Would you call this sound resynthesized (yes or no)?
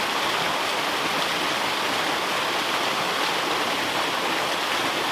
no